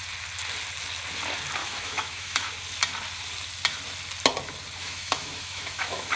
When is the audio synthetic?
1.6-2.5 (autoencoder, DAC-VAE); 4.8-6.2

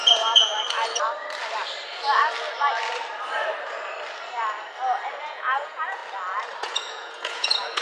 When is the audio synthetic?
0.0-0.5 (vocoder, Vocos); 5.2-6.0; 6.6-7.8

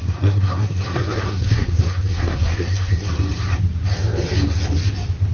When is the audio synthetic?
0.0-3.2 (codec, SNAC)

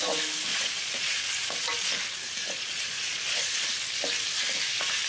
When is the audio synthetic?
0.5-1.2 (vocoder, Vocos); 2.4-3.7

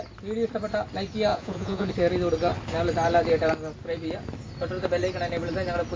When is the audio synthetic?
1.3-1.9 (vocoder, Vocos)